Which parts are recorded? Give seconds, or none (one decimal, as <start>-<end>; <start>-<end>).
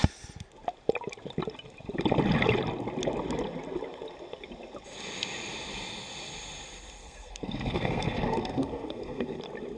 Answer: 0.0-7.0; 9.4-9.8